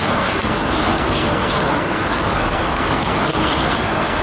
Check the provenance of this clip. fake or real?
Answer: fake